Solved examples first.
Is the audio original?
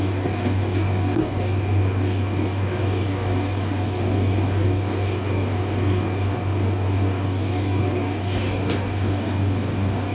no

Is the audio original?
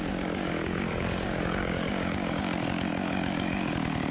no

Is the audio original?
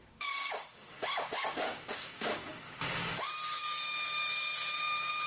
no